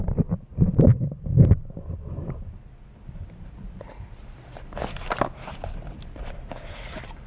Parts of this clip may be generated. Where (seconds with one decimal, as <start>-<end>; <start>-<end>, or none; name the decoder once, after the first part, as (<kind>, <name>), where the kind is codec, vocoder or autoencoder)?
0.0-7.3 (vocoder, BigVGAN v2)